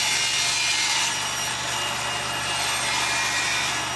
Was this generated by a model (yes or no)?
no